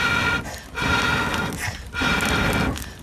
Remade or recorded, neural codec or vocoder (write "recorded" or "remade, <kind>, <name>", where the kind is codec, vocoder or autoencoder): recorded